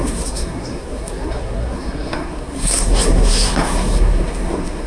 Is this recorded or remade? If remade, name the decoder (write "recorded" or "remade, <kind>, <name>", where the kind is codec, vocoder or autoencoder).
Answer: remade, codec, SNAC